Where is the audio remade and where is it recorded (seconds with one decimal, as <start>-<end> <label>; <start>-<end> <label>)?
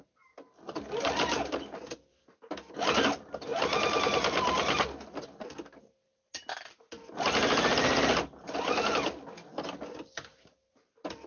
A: 0.0-11.3 recorded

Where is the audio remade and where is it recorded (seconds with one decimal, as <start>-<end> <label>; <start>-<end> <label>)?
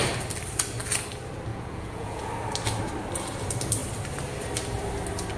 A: 0.0-1.5 recorded; 1.5-2.3 remade; 2.3-5.4 recorded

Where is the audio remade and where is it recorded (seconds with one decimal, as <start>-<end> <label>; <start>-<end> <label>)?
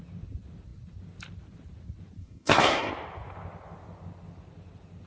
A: 0.0-2.2 recorded; 2.2-2.9 remade; 2.9-5.1 recorded